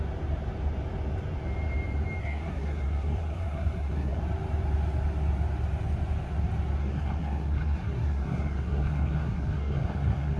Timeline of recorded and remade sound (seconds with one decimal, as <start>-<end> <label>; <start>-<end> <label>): 0.0-2.2 recorded; 2.2-4.2 remade; 4.2-6.8 recorded; 6.8-10.4 remade